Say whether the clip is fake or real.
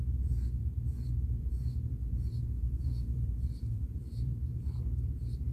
fake